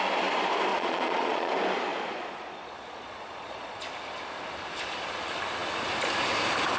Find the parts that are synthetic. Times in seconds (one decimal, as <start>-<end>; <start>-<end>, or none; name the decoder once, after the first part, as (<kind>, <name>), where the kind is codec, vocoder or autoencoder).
0.7-1.5 (vocoder, Vocos); 1.9-3.8

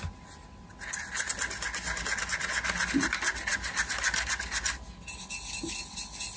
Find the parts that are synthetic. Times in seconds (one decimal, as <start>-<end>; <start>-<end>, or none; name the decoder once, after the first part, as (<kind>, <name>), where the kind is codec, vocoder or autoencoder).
none

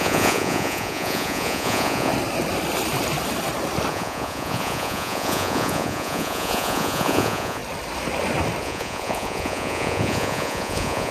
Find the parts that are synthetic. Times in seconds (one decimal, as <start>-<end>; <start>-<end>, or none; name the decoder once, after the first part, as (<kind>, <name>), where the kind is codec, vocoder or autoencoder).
0.0-2.1 (vocoder, Vocos); 3.9-7.6; 8.6-11.1

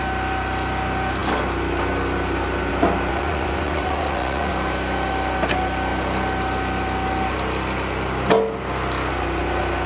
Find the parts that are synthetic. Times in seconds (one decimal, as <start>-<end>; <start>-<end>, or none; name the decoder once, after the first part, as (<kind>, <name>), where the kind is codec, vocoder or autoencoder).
3.1-4.5 (vocoder, Vocos)

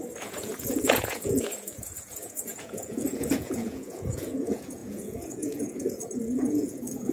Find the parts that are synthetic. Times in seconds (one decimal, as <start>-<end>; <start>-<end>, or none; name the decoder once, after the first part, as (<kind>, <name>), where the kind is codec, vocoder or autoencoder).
0.0-7.1 (vocoder, Vocos)

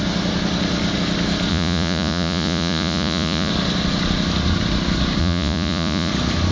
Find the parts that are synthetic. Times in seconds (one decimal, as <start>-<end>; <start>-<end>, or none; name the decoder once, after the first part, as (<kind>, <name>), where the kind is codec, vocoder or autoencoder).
1.5-3.5 (vocoder, Vocos); 5.2-6.1

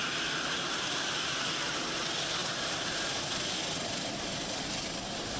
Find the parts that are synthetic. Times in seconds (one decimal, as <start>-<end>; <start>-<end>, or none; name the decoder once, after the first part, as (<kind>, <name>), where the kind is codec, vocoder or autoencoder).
none